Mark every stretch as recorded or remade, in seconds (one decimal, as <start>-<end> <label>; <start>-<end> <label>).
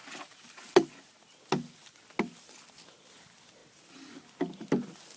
0.0-5.2 recorded